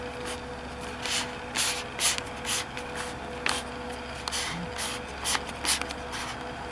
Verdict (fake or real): real